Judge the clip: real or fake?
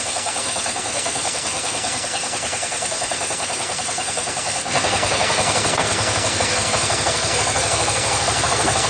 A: fake